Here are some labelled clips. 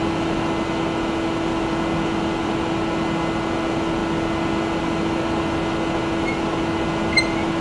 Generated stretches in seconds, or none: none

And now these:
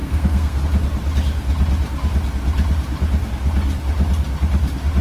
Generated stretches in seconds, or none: 0.0-0.6 (codec, SNAC)